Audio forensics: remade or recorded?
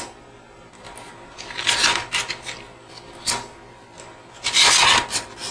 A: recorded